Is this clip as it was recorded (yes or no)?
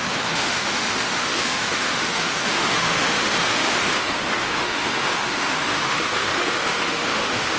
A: no